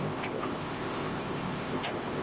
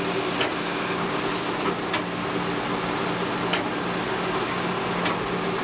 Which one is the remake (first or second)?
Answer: first